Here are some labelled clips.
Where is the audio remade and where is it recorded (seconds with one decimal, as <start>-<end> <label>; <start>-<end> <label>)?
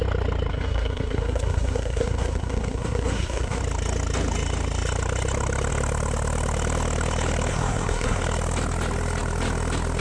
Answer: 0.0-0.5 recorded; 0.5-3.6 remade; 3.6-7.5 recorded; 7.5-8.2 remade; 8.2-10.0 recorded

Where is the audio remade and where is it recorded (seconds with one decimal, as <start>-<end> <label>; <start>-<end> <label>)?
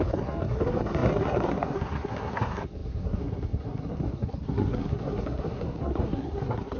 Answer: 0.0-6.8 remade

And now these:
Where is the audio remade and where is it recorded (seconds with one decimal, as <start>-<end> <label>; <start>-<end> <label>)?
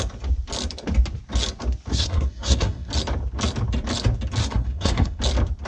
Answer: 0.0-1.9 recorded; 1.9-2.9 remade; 2.9-4.4 recorded; 4.4-5.2 remade; 5.2-5.7 recorded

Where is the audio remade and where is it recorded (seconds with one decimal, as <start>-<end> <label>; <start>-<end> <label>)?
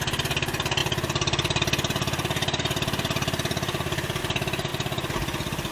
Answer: 0.0-5.7 recorded